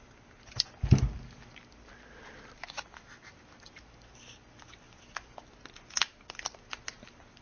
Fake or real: real